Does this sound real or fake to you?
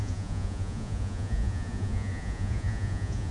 fake